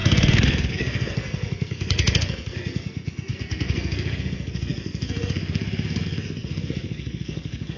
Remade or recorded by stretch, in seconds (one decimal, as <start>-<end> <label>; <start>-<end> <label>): 0.0-7.8 remade